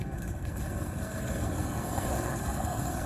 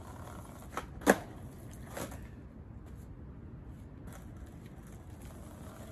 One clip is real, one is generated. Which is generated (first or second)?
first